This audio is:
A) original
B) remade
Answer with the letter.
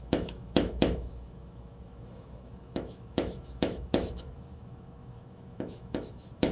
B